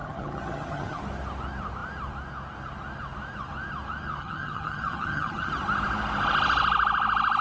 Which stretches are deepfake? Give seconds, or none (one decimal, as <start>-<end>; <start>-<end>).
0.0-1.0; 4.2-5.5